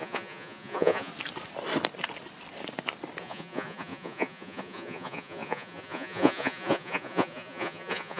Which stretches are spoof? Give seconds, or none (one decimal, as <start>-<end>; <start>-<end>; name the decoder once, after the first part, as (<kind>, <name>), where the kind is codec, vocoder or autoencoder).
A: 0.0-1.1 (vocoder, Vocos); 3.2-8.2